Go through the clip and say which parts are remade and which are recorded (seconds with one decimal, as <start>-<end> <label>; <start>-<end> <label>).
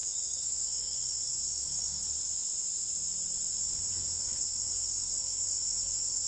0.0-2.0 remade; 2.0-4.0 recorded; 4.0-6.3 remade